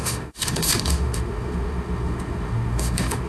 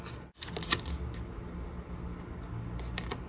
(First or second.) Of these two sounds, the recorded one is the second